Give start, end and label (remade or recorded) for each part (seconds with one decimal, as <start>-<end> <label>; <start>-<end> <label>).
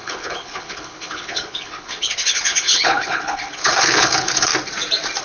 0.0-4.5 remade; 4.5-5.2 recorded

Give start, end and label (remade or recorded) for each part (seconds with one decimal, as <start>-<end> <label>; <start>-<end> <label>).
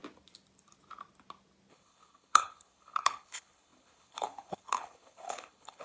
0.0-1.7 recorded; 1.7-5.8 remade